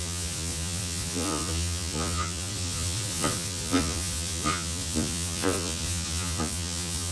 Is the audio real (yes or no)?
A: no